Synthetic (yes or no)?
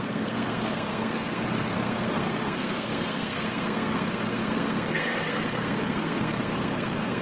yes